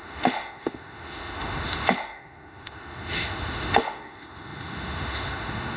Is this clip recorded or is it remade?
remade